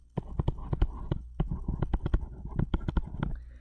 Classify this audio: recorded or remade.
recorded